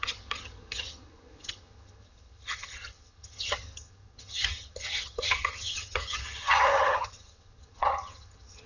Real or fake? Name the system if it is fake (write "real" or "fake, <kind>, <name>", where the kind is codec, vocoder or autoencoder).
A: fake, vocoder, HiFi-GAN